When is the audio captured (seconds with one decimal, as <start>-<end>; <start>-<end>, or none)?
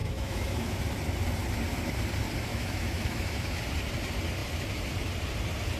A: 0.8-2.5; 3.6-5.8